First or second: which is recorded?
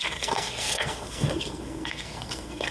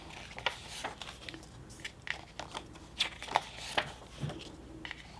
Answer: second